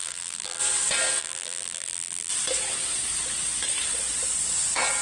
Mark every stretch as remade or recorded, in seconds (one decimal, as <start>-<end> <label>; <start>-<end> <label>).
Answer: 0.0-0.6 remade; 0.6-1.2 recorded; 1.2-2.3 remade; 2.3-5.0 recorded